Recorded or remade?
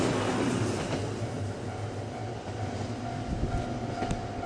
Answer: recorded